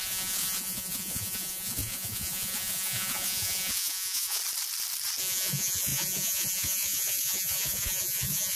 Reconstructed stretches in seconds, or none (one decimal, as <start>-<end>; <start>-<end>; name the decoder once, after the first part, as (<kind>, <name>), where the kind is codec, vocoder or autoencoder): 0.0-4.4 (vocoder, Vocos); 5.2-8.6